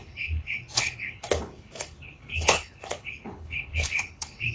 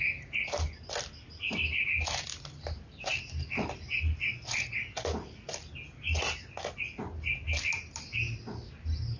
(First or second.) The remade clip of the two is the first